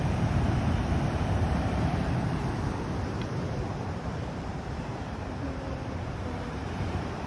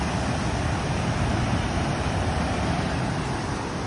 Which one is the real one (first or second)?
second